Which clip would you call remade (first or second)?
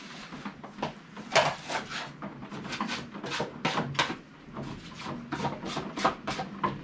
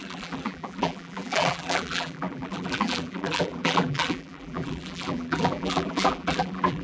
second